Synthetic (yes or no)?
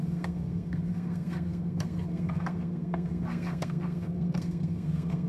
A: yes